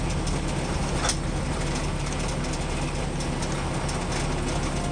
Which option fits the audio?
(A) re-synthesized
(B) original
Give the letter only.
B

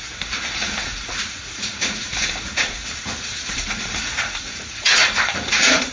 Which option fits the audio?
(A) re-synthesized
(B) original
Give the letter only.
A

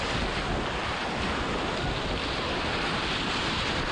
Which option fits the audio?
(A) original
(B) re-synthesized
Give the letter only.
A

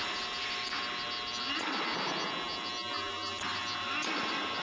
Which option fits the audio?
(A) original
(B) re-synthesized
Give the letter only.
A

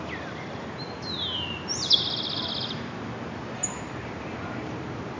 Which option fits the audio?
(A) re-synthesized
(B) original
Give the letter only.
B